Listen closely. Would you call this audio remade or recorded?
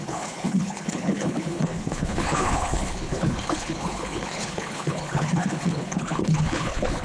remade